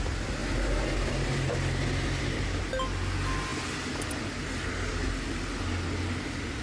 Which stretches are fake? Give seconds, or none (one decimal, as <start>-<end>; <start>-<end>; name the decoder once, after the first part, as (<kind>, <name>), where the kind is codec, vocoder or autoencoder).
0.4-2.6 (vocoder, BigVGAN v2)